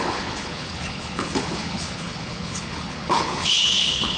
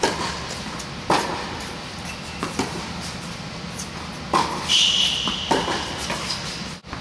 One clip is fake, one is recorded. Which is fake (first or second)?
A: first